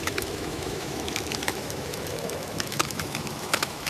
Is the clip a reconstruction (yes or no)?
yes